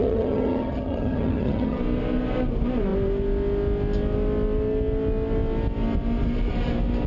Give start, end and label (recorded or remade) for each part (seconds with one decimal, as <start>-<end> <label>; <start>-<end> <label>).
0.0-1.8 remade; 1.8-7.1 recorded